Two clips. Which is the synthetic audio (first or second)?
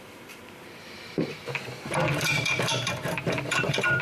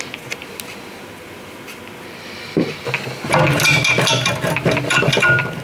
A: first